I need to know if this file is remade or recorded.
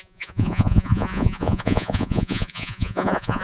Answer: remade